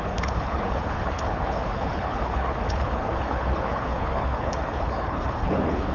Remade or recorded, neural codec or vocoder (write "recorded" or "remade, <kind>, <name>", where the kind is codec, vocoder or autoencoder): remade, codec, HILCodec